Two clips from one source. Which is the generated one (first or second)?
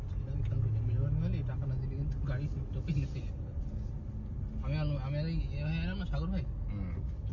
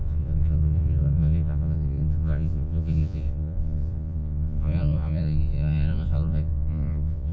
second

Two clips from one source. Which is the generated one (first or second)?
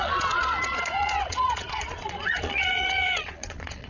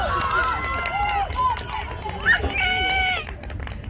first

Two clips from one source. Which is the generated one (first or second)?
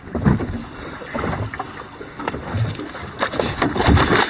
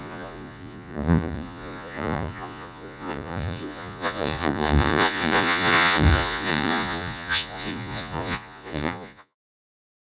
second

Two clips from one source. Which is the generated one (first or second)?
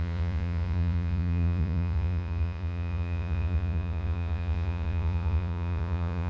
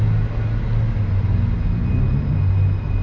first